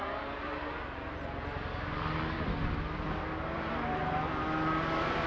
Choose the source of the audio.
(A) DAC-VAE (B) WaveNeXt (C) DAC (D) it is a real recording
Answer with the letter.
D